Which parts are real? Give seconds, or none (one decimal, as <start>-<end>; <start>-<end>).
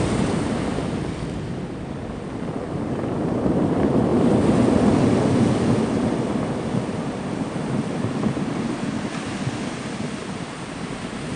0.0-11.4